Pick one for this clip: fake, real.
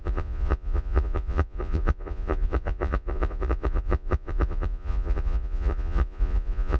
fake